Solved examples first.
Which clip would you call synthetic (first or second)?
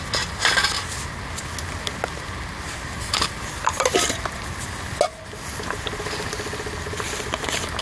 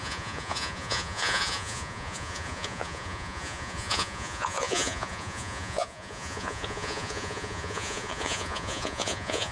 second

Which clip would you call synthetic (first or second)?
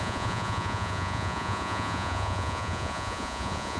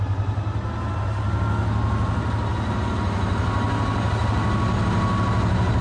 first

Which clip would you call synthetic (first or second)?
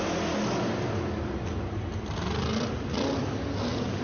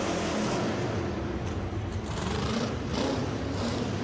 second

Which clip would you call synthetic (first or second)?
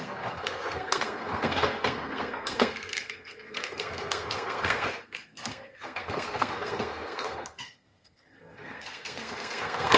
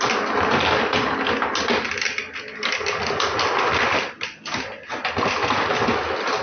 first